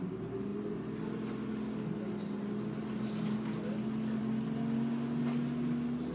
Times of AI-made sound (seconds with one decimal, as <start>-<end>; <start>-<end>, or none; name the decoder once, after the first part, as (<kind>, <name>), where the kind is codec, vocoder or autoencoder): none